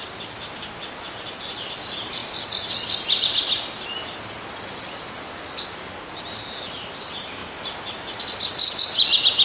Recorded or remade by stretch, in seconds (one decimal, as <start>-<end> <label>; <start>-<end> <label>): 0.0-9.4 recorded

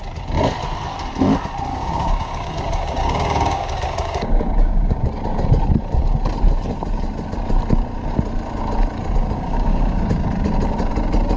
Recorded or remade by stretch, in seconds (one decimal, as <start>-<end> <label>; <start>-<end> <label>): 0.0-1.7 recorded; 1.7-5.1 remade; 5.1-9.2 recorded; 9.2-10.3 remade; 10.3-11.4 recorded

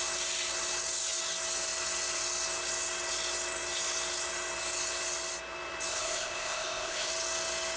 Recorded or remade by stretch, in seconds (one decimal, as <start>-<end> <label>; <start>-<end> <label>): 0.0-5.9 recorded; 5.9-7.1 remade; 7.1-7.8 recorded

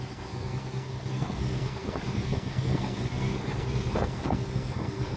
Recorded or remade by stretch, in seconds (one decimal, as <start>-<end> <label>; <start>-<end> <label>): 0.0-5.2 remade

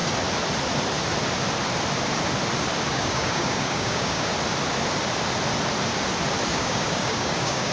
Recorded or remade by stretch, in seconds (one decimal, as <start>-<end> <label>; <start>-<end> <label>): 0.0-2.9 recorded; 2.9-4.3 remade; 4.3-6.5 recorded; 6.5-7.7 remade

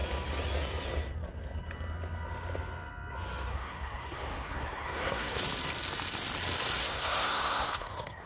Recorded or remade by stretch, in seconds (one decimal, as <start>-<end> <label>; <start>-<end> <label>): 0.0-3.5 recorded; 3.5-5.4 remade; 5.4-6.8 recorded; 6.8-8.3 remade

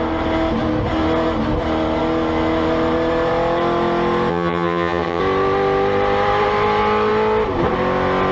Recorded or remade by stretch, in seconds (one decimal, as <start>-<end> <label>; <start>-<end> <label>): 0.0-4.3 recorded; 4.3-5.2 remade; 5.2-8.3 recorded

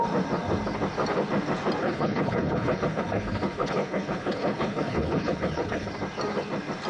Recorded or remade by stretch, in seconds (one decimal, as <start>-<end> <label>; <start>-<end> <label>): 0.0-1.8 recorded; 1.8-5.9 remade; 5.9-6.9 recorded